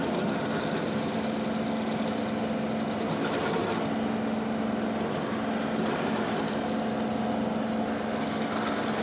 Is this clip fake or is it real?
real